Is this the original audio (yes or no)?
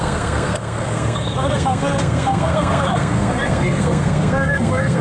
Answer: no